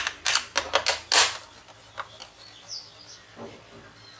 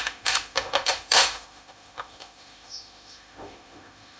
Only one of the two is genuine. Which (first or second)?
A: first